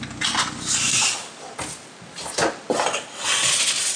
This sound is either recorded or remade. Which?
recorded